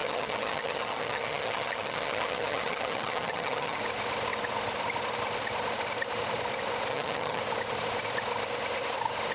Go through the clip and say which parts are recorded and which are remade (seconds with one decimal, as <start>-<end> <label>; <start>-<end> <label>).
0.0-3.8 remade; 3.8-6.9 recorded; 6.9-7.4 remade; 7.4-9.3 recorded